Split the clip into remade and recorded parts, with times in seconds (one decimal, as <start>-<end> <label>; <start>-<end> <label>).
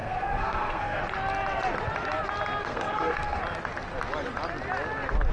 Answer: 0.0-1.0 remade; 1.0-2.6 recorded; 2.6-3.4 remade; 3.4-5.3 recorded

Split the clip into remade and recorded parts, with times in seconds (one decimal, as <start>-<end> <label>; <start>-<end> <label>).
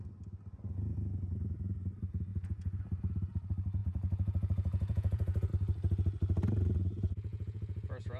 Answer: 0.0-2.3 recorded; 2.3-2.8 remade; 2.8-3.8 recorded; 3.8-5.5 remade; 5.5-7.3 recorded; 7.3-8.2 remade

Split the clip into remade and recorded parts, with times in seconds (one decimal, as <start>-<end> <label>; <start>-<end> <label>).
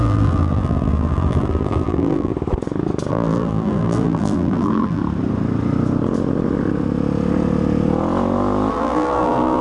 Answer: 0.0-2.3 remade; 2.3-3.1 recorded; 3.1-5.0 remade; 5.0-8.7 recorded; 8.7-9.6 remade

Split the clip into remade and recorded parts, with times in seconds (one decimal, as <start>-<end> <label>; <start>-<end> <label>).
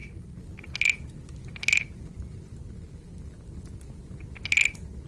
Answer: 0.0-5.1 recorded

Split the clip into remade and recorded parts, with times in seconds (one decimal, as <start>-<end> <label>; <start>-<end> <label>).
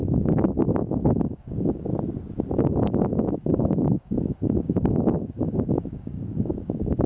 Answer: 0.0-1.9 remade; 1.9-2.5 recorded; 2.5-7.1 remade